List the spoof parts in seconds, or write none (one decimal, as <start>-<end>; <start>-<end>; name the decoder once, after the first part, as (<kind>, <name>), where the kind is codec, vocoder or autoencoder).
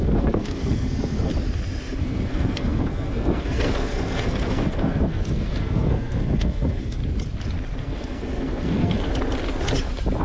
0.0-1.3 (codec, SNAC); 2.0-7.0; 7.8-9.1